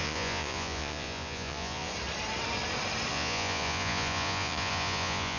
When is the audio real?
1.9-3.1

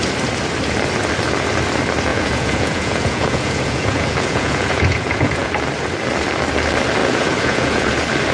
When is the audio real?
0.0-2.1; 5.5-7.0; 7.9-8.3

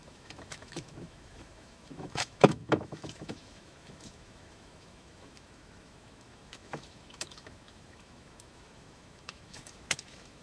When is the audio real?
none

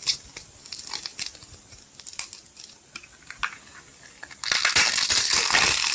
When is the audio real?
0.0-5.9

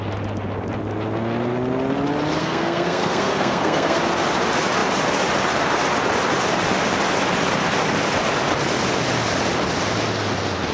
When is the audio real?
0.0-2.4; 4.0-10.7

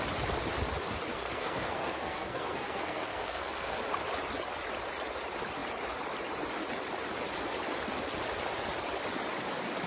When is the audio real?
0.0-1.1; 3.8-9.9